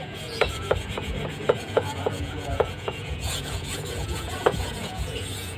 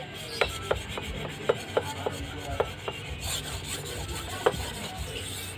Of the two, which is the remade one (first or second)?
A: first